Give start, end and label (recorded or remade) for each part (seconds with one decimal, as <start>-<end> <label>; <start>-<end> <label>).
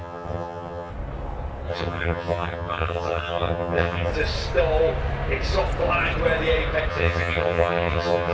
0.0-0.9 remade; 0.9-1.7 recorded; 1.7-4.1 remade; 4.1-6.9 recorded; 6.9-8.3 remade